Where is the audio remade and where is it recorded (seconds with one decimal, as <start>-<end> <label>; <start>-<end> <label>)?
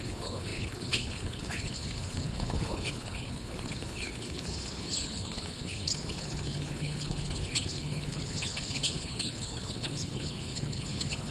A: 0.0-11.3 remade